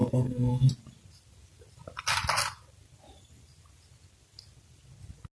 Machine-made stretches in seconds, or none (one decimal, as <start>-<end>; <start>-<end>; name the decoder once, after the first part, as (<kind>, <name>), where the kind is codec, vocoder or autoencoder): 0.0-0.7 (codec, SNAC)